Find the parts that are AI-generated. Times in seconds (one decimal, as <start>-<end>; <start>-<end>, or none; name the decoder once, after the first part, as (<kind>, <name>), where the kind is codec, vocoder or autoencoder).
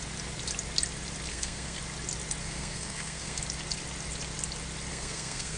1.3-1.8 (codec, SNAC); 2.4-3.4; 4.9-5.6